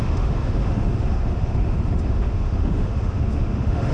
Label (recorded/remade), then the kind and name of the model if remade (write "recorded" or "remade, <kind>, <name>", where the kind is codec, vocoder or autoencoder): remade, autoencoder, DAC-VAE